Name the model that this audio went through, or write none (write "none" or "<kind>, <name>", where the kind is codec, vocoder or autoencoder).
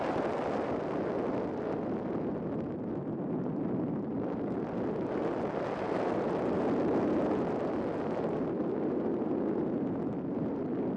none